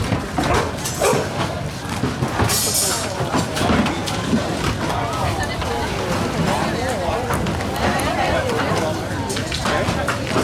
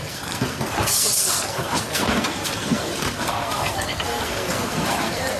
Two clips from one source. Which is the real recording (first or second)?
first